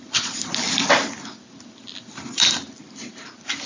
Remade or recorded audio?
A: recorded